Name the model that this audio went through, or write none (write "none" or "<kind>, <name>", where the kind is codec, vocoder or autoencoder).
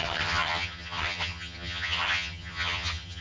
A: vocoder, HiFi-GAN